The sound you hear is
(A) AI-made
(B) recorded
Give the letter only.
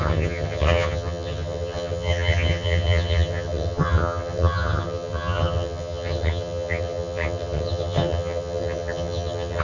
A